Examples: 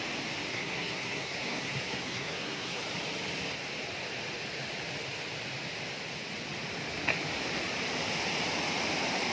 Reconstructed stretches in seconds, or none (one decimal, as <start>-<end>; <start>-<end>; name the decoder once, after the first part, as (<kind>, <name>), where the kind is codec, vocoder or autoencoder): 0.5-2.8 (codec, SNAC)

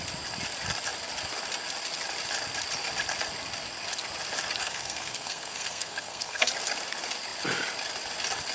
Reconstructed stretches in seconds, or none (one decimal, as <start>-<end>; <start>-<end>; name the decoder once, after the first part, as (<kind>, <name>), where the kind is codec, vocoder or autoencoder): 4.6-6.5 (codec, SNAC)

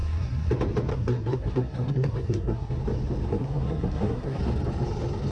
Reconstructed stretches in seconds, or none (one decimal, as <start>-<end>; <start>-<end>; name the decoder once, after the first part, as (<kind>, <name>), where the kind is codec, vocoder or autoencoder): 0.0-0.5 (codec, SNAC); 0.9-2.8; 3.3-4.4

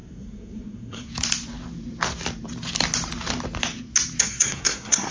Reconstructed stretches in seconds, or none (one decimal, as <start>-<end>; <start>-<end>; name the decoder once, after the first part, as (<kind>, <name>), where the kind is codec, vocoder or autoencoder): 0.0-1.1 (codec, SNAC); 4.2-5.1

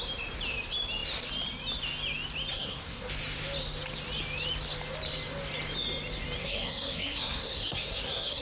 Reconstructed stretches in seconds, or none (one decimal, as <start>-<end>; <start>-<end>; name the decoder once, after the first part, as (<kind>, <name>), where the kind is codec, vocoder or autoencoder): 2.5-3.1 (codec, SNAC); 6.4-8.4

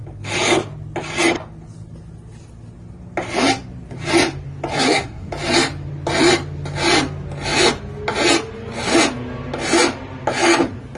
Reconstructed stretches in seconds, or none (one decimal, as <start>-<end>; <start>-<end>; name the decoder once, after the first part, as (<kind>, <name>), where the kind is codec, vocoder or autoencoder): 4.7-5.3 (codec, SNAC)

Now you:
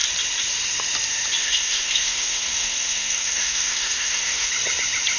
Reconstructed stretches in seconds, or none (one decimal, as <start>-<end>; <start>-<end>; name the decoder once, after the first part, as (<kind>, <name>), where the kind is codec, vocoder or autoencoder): 1.4-4.5 (codec, SNAC)